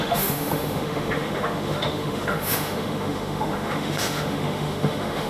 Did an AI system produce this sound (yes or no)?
yes